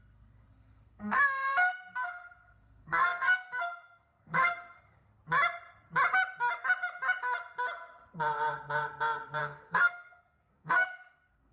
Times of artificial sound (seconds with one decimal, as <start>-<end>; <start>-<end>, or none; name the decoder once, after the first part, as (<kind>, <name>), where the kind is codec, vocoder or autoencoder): 0.0-5.1 (codec, SNAC); 9.4-11.5